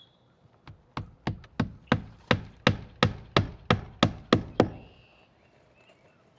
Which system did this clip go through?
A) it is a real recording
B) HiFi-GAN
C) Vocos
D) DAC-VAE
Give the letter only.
A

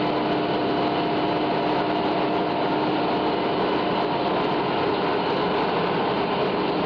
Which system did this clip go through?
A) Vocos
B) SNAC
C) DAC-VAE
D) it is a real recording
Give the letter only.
D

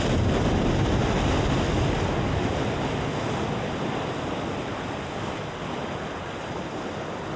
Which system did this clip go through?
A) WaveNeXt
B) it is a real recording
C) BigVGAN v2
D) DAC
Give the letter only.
B